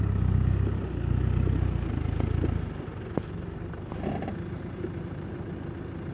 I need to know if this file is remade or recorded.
recorded